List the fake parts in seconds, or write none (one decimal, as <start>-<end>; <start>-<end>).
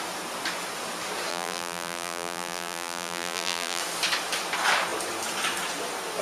1.3-3.8